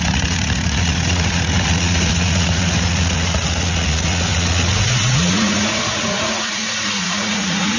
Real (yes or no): no